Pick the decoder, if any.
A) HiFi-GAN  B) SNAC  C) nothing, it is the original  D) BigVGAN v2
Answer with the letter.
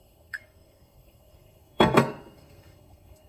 B